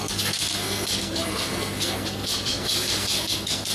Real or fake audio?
fake